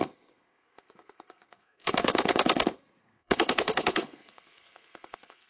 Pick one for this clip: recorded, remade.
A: remade